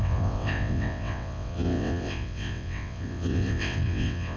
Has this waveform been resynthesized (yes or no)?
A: yes